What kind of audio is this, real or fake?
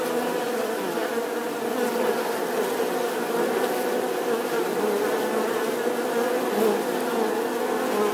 real